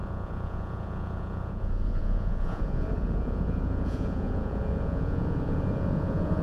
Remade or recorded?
remade